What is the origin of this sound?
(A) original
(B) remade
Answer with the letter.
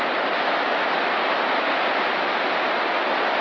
A